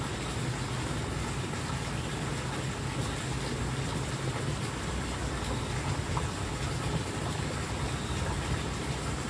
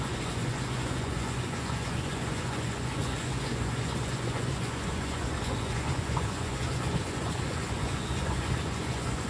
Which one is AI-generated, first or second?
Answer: second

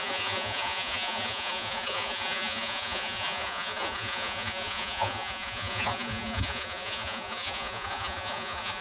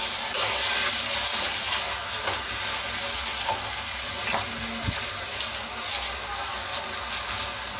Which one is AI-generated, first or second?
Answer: first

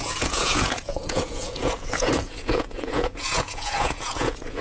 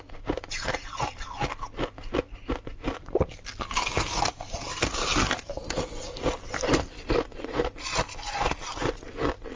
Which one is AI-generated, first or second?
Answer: first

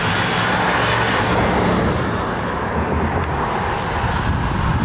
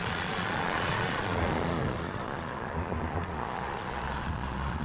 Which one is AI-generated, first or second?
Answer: second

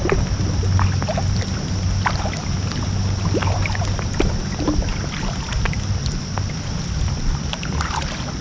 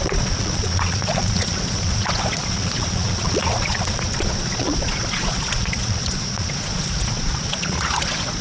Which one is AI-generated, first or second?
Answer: second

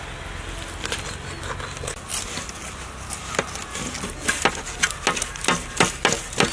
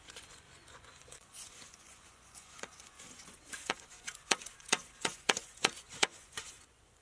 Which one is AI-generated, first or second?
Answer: second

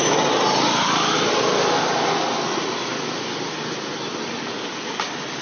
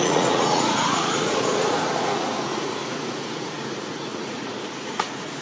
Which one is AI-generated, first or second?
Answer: second